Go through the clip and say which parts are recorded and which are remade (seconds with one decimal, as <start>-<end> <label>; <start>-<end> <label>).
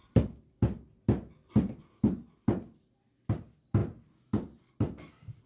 0.0-5.5 recorded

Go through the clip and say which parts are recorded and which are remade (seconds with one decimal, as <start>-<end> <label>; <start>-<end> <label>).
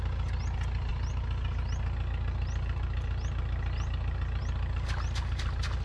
0.0-5.8 recorded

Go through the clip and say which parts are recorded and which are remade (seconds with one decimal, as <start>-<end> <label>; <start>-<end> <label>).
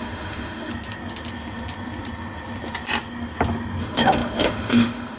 0.0-0.7 remade; 0.7-3.8 recorded; 3.8-5.2 remade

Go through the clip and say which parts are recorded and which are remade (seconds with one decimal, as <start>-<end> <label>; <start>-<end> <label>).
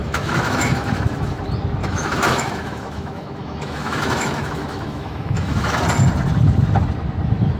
0.0-1.4 remade; 1.4-1.8 recorded; 1.8-5.8 remade; 5.8-7.6 recorded